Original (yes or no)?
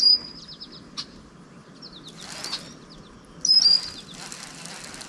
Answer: yes